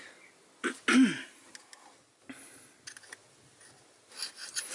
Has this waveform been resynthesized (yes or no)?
no